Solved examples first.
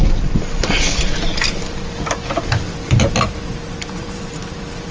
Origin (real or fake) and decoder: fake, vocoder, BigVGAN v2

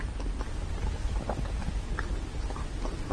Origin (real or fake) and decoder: real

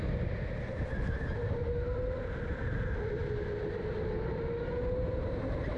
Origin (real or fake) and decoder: real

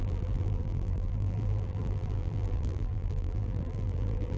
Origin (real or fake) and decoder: fake, vocoder, BigVGAN v2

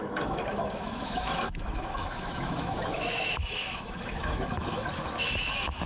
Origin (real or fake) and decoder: fake, autoencoder, DAC-VAE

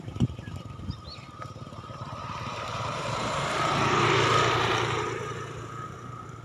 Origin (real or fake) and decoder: fake, vocoder, BigVGAN v2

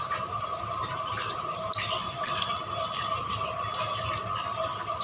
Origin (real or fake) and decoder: real